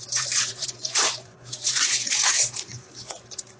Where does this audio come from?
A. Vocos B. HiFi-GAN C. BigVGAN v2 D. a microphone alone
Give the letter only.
A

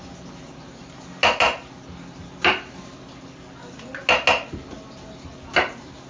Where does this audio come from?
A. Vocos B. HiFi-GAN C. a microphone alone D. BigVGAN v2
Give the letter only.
C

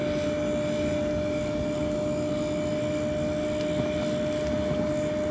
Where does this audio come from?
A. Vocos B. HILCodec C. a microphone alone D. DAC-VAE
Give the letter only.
C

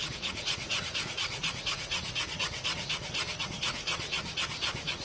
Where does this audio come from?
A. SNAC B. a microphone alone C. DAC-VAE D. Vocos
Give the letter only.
D